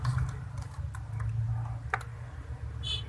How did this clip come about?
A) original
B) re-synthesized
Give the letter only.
A